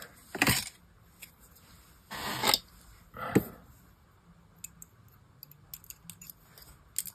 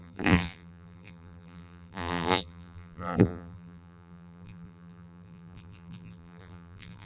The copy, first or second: second